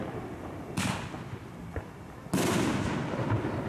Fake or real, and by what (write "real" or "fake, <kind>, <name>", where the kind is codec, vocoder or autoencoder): real